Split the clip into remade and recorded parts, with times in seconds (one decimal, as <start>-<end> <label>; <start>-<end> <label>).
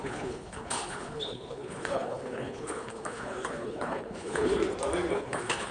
0.0-4.6 remade; 4.6-5.1 recorded; 5.1-5.7 remade